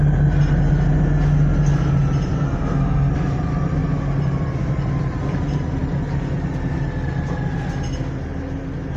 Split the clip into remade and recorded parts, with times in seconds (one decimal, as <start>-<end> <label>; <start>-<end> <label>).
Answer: 0.0-2.3 recorded; 2.3-3.1 remade; 3.1-9.0 recorded